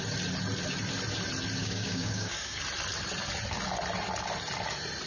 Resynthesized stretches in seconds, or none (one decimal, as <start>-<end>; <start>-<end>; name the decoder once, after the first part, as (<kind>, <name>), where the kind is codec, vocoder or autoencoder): 1.6-2.6 (codec, DAC)